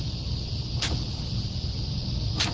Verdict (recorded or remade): recorded